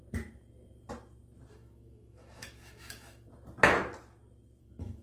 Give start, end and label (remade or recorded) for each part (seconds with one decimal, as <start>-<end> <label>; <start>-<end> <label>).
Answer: 0.0-1.5 recorded; 1.5-3.3 remade; 3.3-4.6 recorded; 4.6-5.0 remade